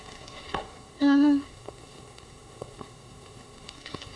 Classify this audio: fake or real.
fake